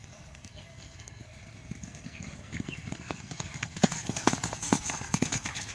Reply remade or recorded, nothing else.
remade